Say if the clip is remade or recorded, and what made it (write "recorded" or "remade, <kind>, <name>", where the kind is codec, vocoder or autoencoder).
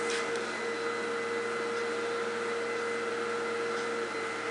recorded